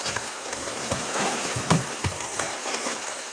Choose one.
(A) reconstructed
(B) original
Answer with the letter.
A